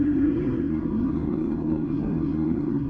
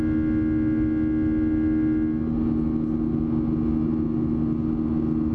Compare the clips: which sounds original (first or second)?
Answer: second